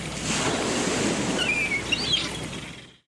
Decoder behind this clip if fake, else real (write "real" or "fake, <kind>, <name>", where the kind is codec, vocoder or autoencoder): real